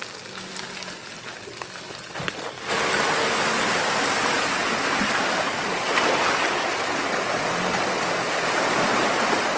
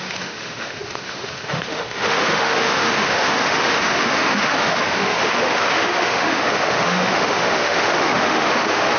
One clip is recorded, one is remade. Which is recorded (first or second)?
first